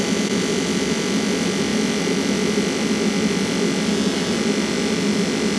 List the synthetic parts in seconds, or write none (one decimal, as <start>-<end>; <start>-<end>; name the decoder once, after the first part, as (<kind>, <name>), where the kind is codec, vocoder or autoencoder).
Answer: none